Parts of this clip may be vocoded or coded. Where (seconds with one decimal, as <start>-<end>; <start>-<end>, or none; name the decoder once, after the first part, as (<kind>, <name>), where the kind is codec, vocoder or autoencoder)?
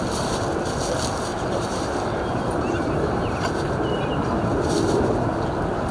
1.3-3.3 (vocoder, BigVGAN v2)